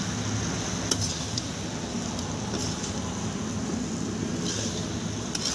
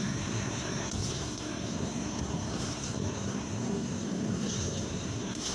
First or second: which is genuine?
first